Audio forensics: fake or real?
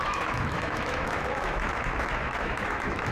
fake